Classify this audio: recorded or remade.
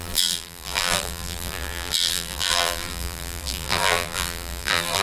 remade